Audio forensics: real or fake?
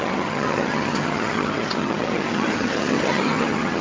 fake